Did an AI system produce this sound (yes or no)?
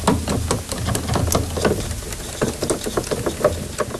no